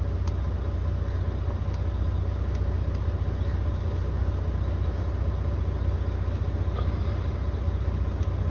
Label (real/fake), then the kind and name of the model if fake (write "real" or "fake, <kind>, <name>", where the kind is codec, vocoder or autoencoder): real